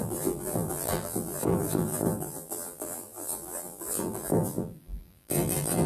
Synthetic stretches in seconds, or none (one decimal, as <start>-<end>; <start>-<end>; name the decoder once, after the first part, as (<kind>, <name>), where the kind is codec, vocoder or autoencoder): 0.0-5.9 (vocoder, BigVGAN v2)